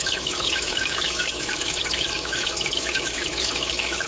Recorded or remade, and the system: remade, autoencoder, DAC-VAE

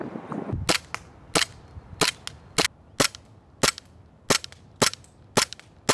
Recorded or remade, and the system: recorded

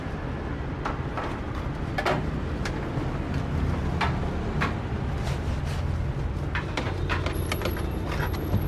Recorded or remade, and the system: recorded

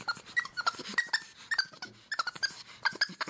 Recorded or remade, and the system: recorded